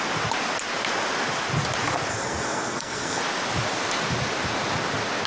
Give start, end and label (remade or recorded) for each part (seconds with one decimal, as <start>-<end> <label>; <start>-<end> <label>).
0.0-2.1 recorded; 2.1-3.2 remade; 3.2-5.3 recorded